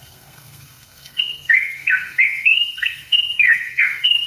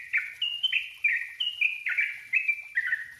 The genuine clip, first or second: second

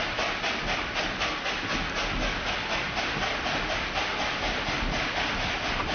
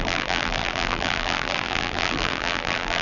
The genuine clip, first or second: first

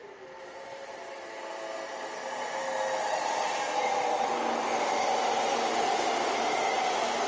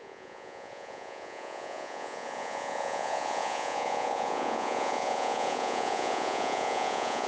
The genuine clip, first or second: first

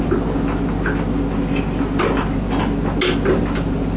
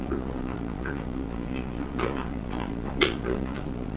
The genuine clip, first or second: first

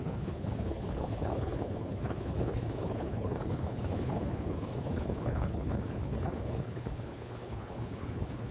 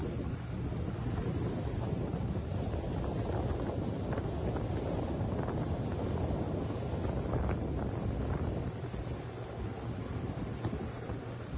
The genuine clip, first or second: second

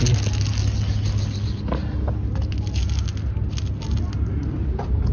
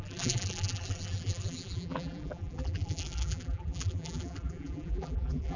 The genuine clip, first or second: first